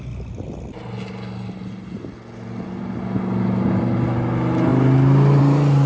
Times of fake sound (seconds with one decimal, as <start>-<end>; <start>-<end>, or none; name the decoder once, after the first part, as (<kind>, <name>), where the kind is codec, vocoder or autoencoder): none